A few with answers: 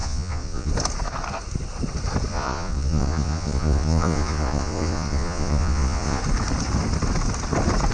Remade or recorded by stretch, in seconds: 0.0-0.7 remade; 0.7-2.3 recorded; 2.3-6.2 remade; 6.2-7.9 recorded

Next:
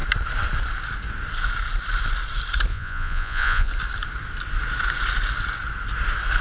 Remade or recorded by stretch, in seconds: 0.0-2.7 recorded; 2.7-3.7 remade; 3.7-6.4 recorded

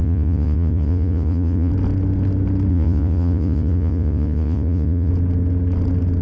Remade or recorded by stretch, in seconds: 0.0-1.7 remade; 1.7-2.7 recorded; 2.7-5.1 remade; 5.1-6.2 recorded

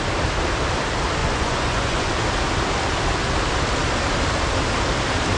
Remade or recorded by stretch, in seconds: 0.0-1.2 recorded; 1.2-2.1 remade; 2.1-5.4 recorded

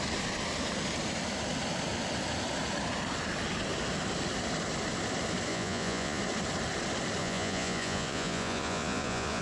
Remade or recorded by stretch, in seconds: 0.0-5.5 recorded; 5.5-6.2 remade; 6.2-7.2 recorded; 7.2-9.4 remade

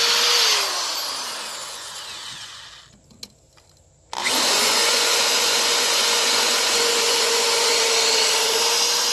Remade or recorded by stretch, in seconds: 0.0-1.6 recorded; 1.6-2.6 remade; 2.6-4.2 recorded; 4.2-7.8 remade; 7.8-9.1 recorded

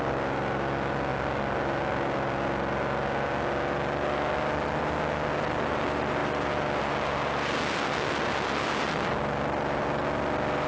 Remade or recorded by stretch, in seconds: 0.0-10.7 recorded

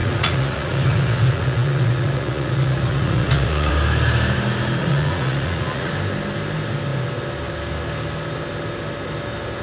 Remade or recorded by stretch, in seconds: 0.0-3.7 remade; 3.7-4.8 recorded; 4.8-5.9 remade; 5.9-9.6 recorded